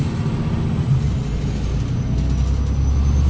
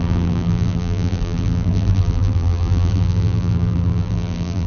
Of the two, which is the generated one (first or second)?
second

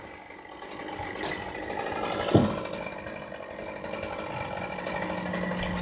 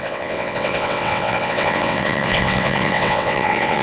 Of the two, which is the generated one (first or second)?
second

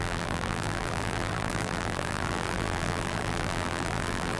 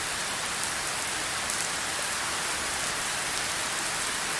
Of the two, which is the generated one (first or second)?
first